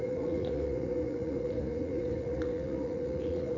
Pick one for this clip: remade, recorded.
remade